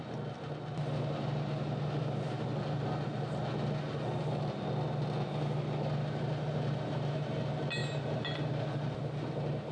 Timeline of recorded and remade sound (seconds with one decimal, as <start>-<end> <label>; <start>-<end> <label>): 0.0-9.7 recorded